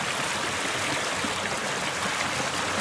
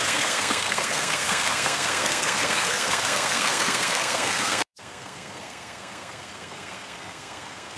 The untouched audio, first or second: first